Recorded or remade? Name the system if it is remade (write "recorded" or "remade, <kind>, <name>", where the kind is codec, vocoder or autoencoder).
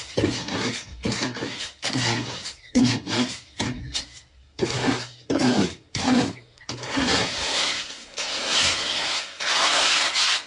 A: remade, codec, SNAC